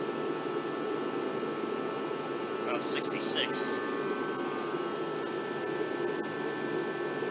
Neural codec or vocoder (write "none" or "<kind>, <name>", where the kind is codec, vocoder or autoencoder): none